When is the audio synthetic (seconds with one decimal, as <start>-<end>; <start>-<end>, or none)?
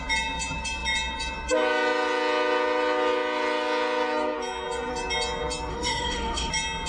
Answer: 5.7-6.5